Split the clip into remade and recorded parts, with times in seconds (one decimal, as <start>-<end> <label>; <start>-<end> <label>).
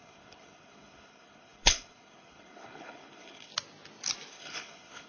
0.0-3.5 remade; 3.5-4.3 recorded; 4.3-5.1 remade